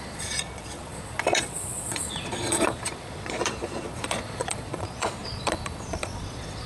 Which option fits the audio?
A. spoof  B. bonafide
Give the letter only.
A